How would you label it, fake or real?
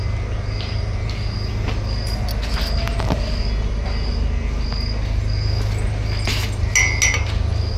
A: real